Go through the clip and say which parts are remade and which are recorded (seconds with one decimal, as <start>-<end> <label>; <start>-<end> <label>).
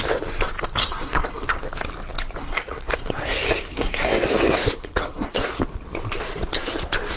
0.0-0.8 recorded; 0.8-1.6 remade; 1.6-2.4 recorded; 2.4-5.6 remade; 5.6-7.2 recorded